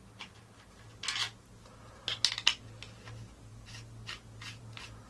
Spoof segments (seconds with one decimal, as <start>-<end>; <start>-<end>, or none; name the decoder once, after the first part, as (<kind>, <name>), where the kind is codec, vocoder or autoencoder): none